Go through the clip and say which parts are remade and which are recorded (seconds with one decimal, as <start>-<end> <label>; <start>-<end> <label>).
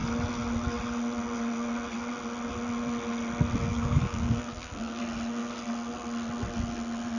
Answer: 0.0-3.7 recorded; 3.7-5.0 remade; 5.0-7.2 recorded